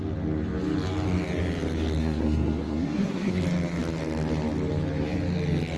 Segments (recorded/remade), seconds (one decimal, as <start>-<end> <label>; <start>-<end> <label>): 0.0-2.0 recorded; 2.0-3.4 remade; 3.4-5.8 recorded